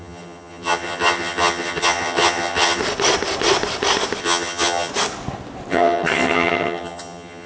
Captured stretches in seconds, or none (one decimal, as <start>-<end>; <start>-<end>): 2.8-4.2; 4.9-5.7